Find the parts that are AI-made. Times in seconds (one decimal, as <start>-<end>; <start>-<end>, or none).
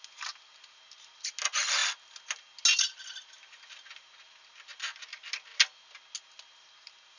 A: none